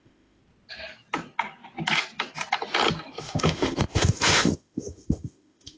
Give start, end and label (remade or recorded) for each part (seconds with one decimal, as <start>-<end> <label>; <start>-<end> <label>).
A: 0.0-0.4 remade; 0.4-3.2 recorded; 3.2-5.8 remade